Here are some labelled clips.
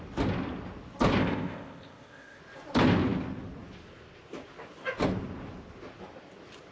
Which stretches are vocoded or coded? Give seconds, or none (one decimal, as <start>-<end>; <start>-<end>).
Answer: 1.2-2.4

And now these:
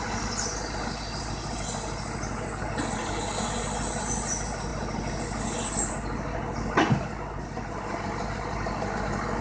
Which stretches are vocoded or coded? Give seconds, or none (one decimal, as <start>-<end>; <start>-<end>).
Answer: none

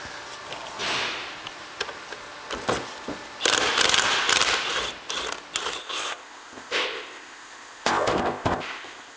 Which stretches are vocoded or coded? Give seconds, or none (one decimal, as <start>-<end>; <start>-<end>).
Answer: 5.8-9.2

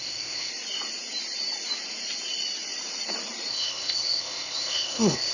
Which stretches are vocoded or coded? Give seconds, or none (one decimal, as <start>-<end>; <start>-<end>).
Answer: 0.0-0.5; 3.5-5.3

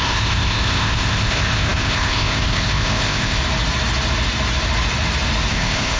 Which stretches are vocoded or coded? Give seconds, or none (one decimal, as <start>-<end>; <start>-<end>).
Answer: 0.0-3.4; 5.5-6.0

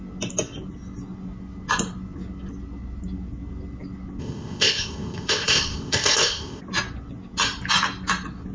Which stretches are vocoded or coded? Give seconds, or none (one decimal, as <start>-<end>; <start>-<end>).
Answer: 4.2-6.6